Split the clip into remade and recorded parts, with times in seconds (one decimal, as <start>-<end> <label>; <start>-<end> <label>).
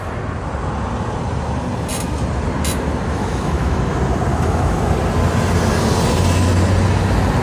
0.0-3.1 recorded; 3.1-3.8 remade; 3.8-4.3 recorded; 4.3-4.9 remade; 4.9-7.4 recorded